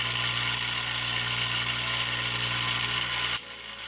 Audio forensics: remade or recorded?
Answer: recorded